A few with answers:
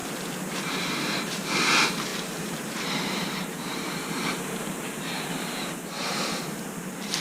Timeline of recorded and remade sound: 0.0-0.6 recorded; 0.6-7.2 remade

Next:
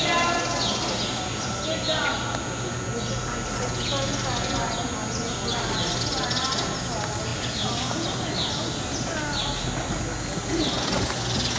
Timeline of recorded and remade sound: 0.0-11.6 recorded

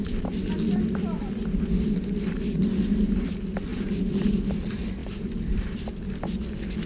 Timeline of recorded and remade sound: 0.0-3.7 recorded; 3.7-4.3 remade; 4.3-5.0 recorded; 5.0-5.9 remade; 5.9-6.9 recorded